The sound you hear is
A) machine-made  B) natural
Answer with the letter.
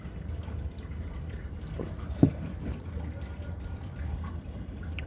A